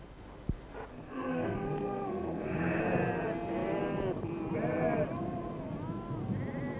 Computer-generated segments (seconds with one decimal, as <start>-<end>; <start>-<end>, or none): 0.9-2.8